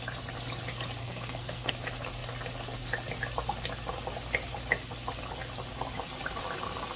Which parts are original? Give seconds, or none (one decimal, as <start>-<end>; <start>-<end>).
0.0-1.0; 1.7-7.0